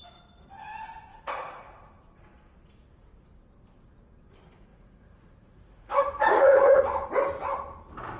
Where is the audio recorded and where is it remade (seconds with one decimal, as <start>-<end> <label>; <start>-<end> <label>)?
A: 0.0-1.1 recorded; 1.1-1.9 remade; 1.9-4.7 recorded; 4.7-6.8 remade; 6.8-8.2 recorded